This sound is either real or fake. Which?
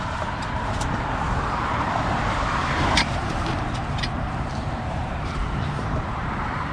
fake